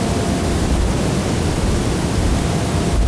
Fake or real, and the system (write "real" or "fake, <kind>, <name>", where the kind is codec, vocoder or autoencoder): real